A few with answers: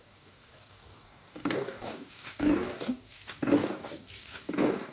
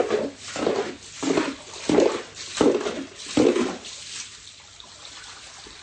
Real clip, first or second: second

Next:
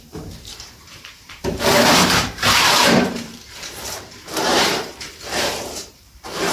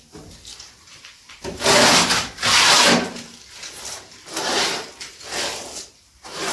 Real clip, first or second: second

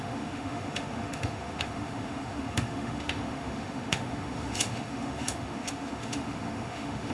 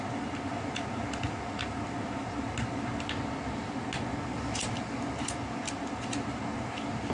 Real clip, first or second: second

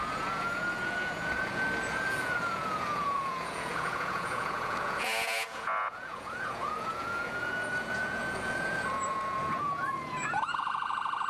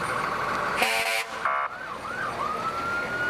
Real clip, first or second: second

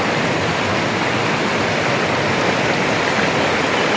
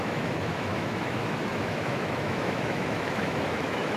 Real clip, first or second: first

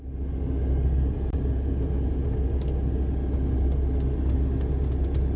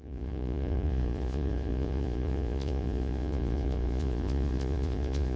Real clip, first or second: first